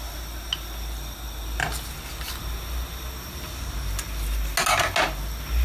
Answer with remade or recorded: recorded